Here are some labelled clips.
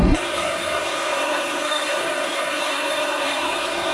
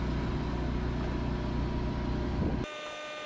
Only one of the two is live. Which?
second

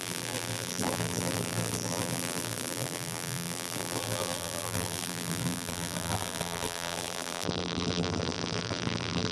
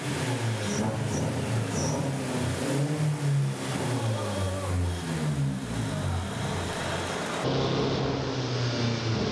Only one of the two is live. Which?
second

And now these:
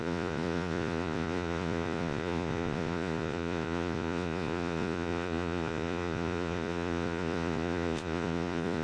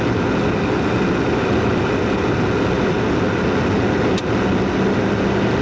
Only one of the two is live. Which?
second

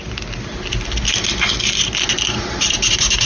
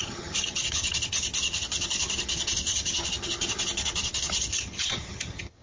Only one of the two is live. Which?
first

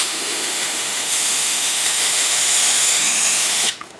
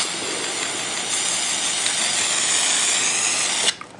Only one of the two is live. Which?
second